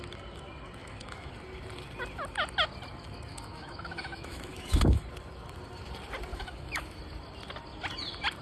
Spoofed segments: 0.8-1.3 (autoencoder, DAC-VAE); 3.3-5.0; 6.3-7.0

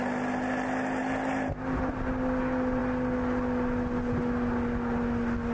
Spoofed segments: none